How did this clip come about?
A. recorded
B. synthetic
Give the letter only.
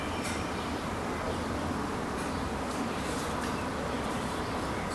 B